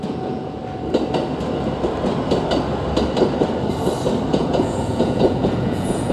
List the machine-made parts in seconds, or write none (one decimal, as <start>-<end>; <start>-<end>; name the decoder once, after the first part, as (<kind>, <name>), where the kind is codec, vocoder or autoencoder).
0.0-0.6 (vocoder, Vocos); 4.3-6.1

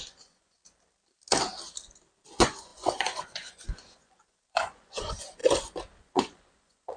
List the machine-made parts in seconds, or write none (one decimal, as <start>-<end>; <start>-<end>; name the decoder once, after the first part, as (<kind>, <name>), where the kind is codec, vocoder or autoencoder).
0.0-0.6 (vocoder, Vocos); 2.3-5.4; 6.0-7.0

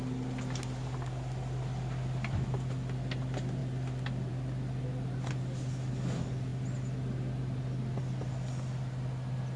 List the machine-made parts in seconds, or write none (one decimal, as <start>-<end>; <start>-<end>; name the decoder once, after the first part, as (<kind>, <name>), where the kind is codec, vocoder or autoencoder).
none

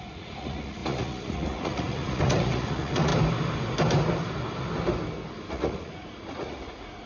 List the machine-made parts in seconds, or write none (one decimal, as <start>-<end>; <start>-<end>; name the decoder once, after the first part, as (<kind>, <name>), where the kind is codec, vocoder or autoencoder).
0.0-3.1 (vocoder, Vocos); 5.5-7.1